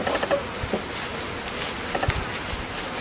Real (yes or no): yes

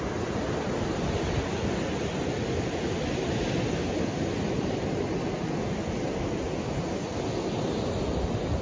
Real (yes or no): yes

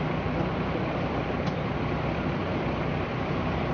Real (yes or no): no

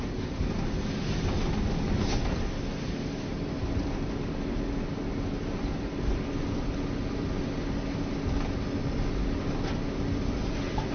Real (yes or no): yes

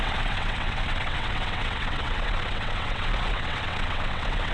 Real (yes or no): no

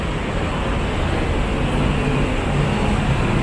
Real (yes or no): yes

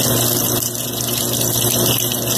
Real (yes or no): yes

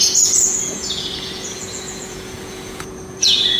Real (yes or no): no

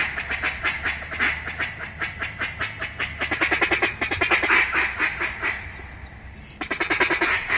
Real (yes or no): yes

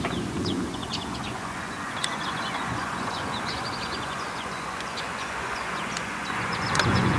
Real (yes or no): no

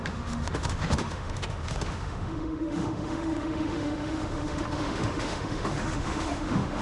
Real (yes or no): no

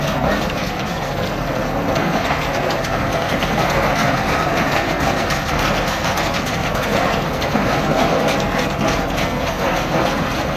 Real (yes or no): no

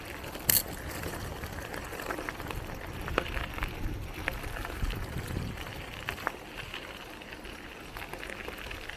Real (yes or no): yes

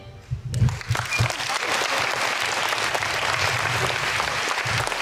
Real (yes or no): yes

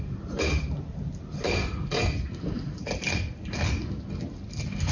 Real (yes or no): yes